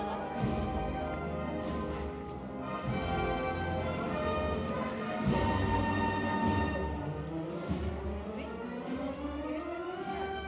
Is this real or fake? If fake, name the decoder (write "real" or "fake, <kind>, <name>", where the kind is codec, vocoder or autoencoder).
real